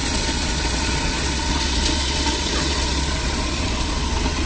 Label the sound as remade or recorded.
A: remade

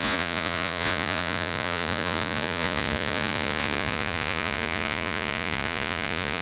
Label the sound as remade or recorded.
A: remade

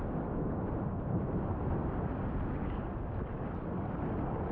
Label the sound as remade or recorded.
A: recorded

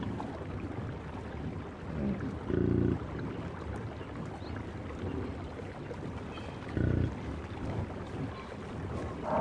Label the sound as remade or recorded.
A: recorded